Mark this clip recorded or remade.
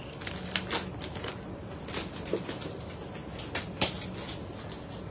recorded